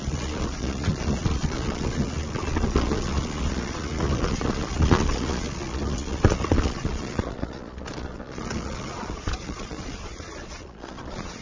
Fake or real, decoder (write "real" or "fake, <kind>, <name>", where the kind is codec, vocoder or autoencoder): fake, vocoder, Vocos